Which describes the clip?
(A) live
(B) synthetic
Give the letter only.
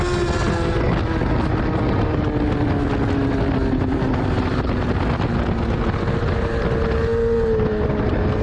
A